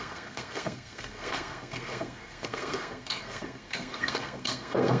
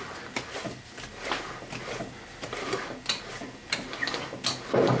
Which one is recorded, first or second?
second